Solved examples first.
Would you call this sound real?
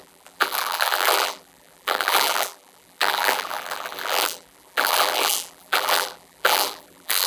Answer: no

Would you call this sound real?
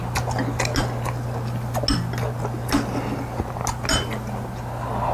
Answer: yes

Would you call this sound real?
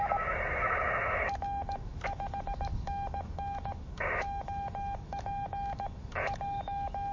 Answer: no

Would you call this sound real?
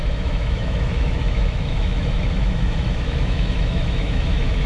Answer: no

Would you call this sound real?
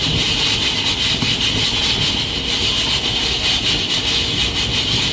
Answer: yes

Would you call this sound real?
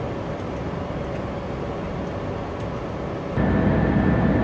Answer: yes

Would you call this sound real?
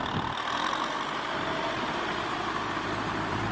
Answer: no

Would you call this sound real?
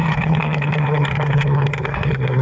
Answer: no